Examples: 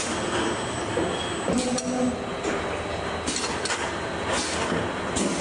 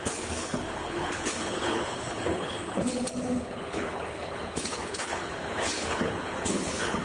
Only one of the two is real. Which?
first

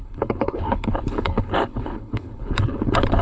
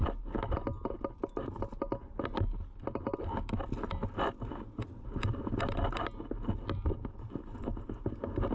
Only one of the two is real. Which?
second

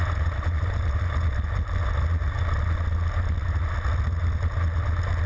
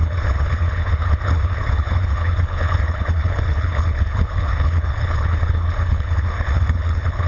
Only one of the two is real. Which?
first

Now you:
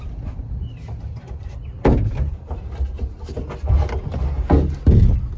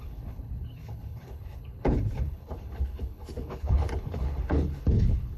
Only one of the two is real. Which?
first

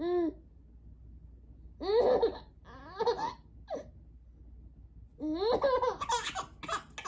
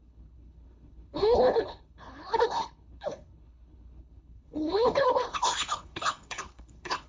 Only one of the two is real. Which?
first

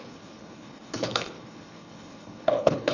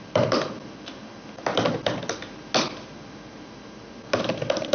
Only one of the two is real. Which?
second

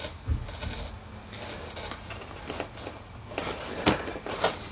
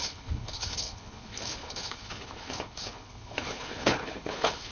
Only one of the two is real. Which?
first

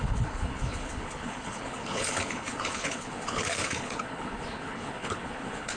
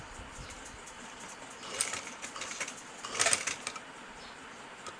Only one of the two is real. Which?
second